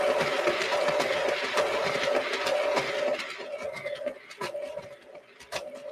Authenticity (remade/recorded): recorded